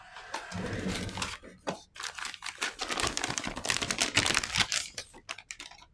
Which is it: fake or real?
real